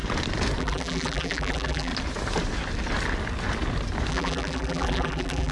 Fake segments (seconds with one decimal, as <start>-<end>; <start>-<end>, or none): 0.6-1.9; 4.1-5.5